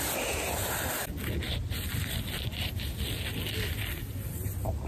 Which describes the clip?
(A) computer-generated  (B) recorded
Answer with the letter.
B